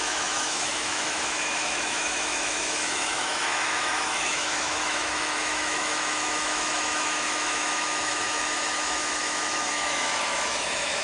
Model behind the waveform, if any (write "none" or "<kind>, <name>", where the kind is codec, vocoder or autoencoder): autoencoder, DAC-VAE